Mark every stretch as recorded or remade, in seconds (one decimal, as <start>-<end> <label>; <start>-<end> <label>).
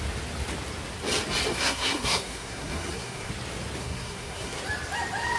0.0-1.5 recorded; 1.5-3.3 remade; 3.3-3.8 recorded; 3.8-4.6 remade; 4.6-5.4 recorded